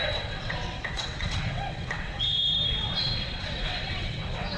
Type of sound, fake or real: fake